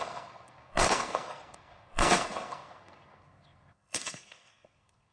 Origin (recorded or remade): remade